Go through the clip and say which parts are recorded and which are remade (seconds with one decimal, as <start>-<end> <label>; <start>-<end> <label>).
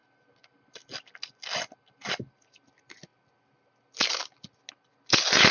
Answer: 0.0-5.5 recorded